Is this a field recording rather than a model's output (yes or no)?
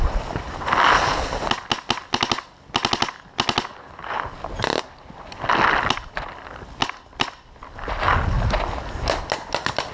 yes